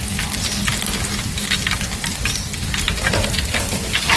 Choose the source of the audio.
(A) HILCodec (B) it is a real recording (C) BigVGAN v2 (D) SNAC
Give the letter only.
B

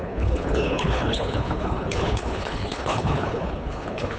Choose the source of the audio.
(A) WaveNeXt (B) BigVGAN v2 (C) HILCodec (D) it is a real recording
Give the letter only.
C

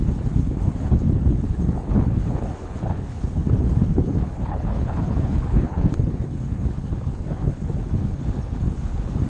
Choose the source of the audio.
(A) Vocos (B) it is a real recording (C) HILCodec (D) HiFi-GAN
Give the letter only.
C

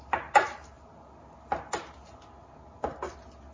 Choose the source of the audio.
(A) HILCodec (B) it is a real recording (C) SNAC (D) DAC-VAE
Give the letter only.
B